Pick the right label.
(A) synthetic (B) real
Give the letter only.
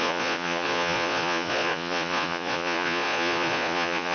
A